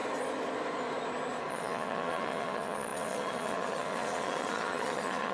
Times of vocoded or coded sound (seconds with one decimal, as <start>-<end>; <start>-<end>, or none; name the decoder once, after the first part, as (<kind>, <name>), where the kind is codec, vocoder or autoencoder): 1.5-5.3 (vocoder, Vocos)